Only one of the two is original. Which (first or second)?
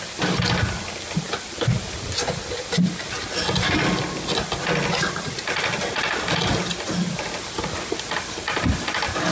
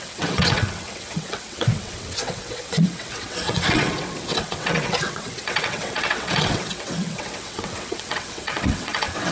first